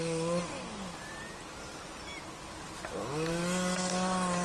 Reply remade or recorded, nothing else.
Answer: recorded